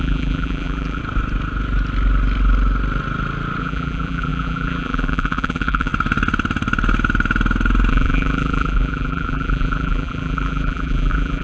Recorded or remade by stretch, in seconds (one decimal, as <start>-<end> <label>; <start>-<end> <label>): 0.0-1.0 remade; 1.0-3.6 recorded; 3.6-5.9 remade; 5.9-7.9 recorded; 7.9-11.4 remade